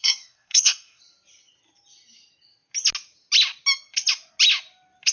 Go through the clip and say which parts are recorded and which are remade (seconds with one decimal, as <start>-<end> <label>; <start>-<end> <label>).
0.0-1.0 remade; 1.0-5.1 recorded